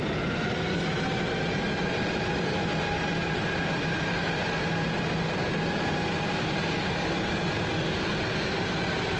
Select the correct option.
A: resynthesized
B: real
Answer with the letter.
B